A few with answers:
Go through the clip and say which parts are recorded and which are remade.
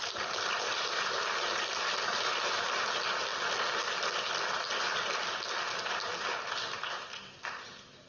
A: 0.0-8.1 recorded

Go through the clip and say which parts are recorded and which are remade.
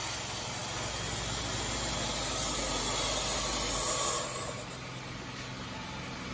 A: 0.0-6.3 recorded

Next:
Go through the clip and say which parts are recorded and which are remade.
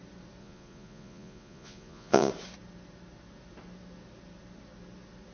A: 0.0-0.4 recorded; 0.4-2.3 remade; 2.3-5.3 recorded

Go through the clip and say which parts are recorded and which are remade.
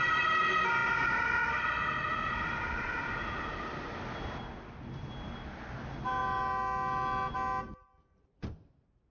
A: 0.0-9.1 recorded